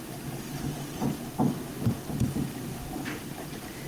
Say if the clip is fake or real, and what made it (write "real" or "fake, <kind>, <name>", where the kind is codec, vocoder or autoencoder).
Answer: fake, vocoder, BigVGAN v2